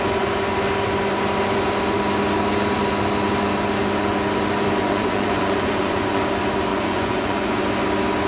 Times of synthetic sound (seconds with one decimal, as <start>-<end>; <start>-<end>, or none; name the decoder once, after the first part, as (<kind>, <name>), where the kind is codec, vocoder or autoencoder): 4.8-6.2 (vocoder, Vocos); 6.7-7.6